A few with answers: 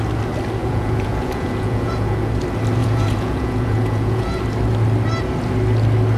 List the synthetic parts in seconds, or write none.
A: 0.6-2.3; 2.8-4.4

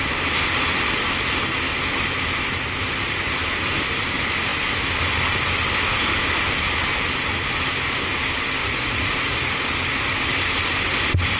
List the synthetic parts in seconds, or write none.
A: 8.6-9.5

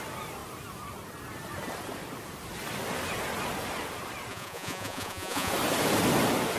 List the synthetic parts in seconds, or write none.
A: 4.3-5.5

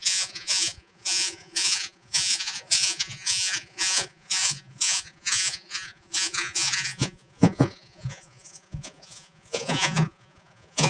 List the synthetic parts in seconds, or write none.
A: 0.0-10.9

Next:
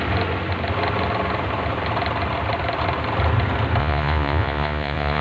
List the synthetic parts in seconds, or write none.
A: 3.8-5.2

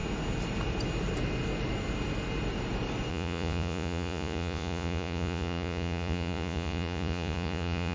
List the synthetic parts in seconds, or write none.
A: 3.1-7.9